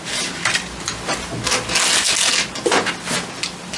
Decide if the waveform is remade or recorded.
recorded